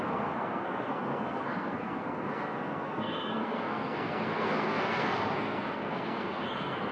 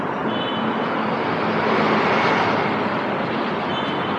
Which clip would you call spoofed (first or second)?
first